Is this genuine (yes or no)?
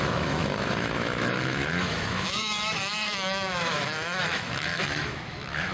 no